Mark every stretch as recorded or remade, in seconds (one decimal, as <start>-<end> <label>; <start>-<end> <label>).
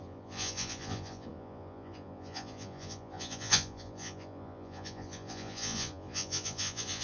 0.0-7.0 remade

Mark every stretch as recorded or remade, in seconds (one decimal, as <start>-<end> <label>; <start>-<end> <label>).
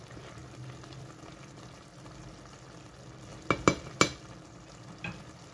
0.0-5.5 recorded